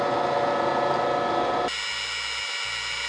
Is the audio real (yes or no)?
yes